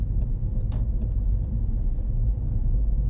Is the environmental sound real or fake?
real